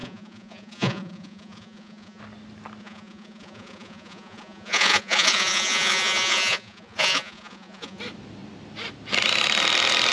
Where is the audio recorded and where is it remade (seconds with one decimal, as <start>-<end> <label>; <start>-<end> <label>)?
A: 0.0-2.2 remade; 2.2-2.8 recorded; 2.8-8.0 remade; 8.0-10.1 recorded